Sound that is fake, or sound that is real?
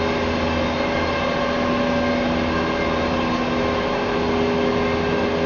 real